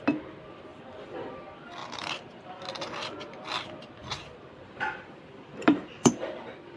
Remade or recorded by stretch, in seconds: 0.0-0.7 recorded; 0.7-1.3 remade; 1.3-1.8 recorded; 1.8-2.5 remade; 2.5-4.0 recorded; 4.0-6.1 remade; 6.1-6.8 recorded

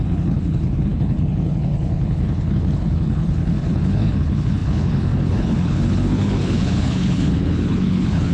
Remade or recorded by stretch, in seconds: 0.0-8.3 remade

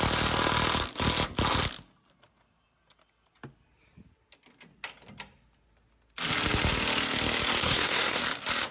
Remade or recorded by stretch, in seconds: 0.0-7.6 recorded; 7.6-8.2 remade; 8.2-8.7 recorded

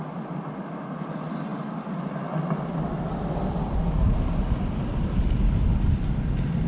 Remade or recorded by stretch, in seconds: 0.0-1.5 remade; 1.5-3.5 recorded; 3.5-6.7 remade

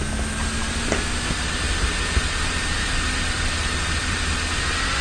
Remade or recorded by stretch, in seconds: 0.0-2.8 recorded; 2.8-5.0 remade

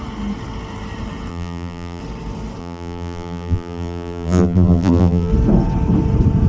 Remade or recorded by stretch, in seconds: 0.0-1.3 recorded; 1.3-2.0 remade; 2.0-2.6 recorded; 2.6-5.3 remade; 5.3-6.5 recorded

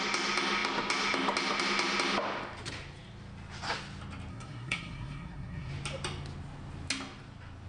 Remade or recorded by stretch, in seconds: 0.0-4.3 recorded; 4.3-5.7 remade; 5.7-7.7 recorded

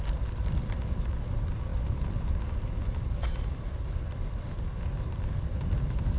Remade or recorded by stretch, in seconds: 0.0-6.2 recorded